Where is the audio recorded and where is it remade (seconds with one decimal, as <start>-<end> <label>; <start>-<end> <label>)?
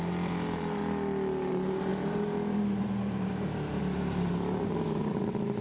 0.0-0.8 remade; 0.8-1.5 recorded; 1.5-3.7 remade; 3.7-5.0 recorded; 5.0-5.6 remade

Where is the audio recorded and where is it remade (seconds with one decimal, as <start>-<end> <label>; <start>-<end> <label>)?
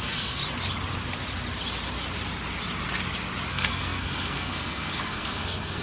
0.0-0.4 remade; 0.4-3.5 recorded; 3.5-5.8 remade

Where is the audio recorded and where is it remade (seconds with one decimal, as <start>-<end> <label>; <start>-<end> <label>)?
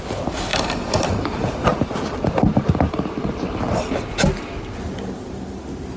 0.0-6.0 recorded